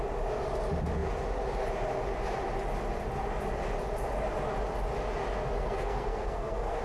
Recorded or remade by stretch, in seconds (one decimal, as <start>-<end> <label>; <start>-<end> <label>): 0.0-5.6 recorded; 5.6-6.8 remade